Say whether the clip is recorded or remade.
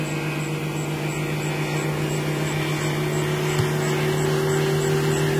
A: recorded